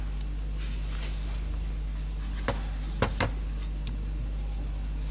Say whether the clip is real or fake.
real